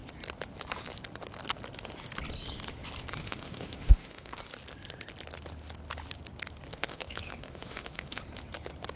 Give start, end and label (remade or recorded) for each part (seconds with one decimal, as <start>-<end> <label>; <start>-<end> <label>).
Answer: 0.0-3.2 recorded; 3.2-4.4 remade; 4.4-6.7 recorded; 6.7-8.2 remade; 8.2-9.0 recorded